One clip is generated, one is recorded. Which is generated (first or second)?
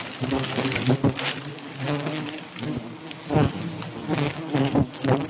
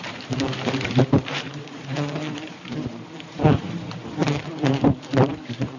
second